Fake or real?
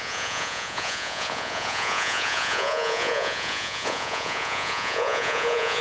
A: fake